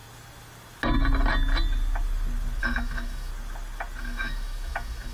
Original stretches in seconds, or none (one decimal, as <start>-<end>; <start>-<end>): 0.0-2.6; 3.3-4.0